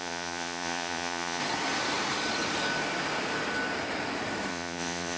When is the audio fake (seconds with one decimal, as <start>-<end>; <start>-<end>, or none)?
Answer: 0.0-1.4; 4.5-5.2